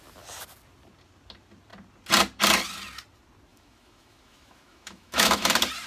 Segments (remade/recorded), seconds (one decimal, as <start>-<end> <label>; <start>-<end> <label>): 0.0-3.5 recorded; 3.5-5.5 remade; 5.5-5.9 recorded

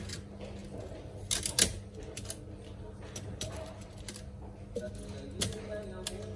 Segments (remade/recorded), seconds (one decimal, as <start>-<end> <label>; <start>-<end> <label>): 0.0-6.4 recorded

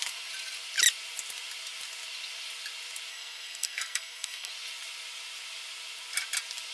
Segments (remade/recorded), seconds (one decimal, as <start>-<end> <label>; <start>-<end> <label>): 0.0-3.1 recorded; 3.1-4.5 remade; 4.5-6.7 recorded

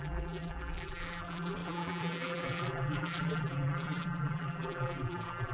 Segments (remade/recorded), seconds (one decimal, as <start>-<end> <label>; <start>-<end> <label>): 0.0-5.5 remade

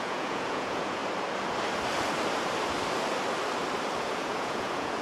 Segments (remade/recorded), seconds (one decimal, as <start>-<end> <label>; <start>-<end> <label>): 0.0-1.0 remade; 1.0-4.0 recorded; 4.0-5.0 remade

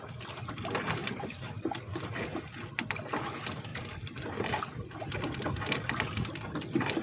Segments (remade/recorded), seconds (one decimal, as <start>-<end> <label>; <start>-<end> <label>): 0.0-1.0 recorded; 1.0-2.2 remade; 2.2-3.7 recorded; 3.7-4.2 remade; 4.2-7.0 recorded

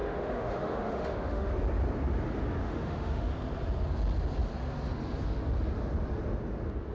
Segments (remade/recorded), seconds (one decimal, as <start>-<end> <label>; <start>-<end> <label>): 0.0-1.5 remade; 1.5-2.6 recorded; 2.6-3.3 remade; 3.3-6.9 recorded

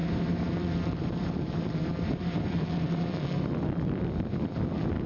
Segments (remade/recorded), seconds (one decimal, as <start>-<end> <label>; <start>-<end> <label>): 0.0-3.1 remade; 3.1-5.1 recorded